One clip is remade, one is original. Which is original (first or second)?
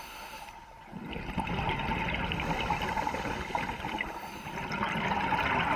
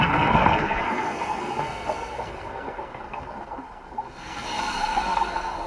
first